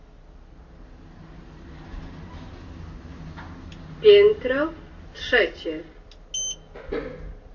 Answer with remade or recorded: recorded